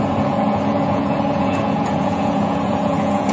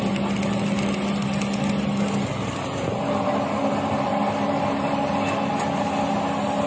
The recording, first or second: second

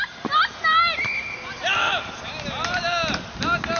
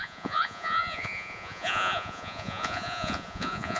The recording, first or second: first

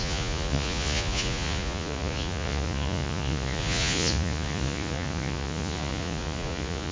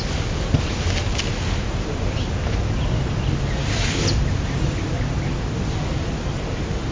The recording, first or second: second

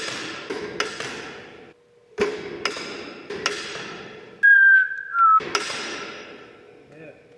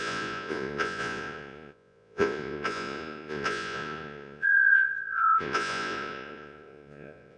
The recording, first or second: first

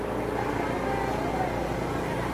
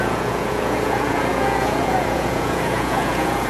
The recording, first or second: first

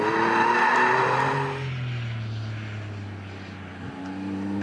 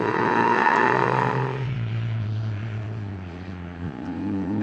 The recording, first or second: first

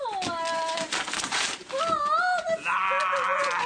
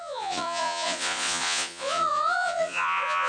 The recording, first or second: first